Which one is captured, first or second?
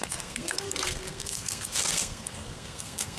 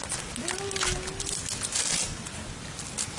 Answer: second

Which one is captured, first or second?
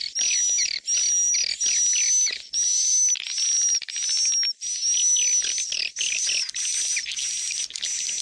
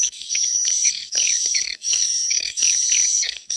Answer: first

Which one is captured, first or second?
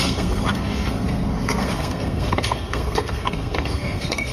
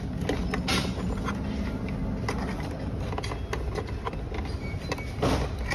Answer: second